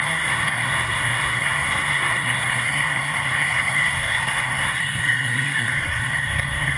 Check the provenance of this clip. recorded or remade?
remade